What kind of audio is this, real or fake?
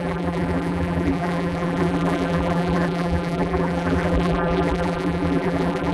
fake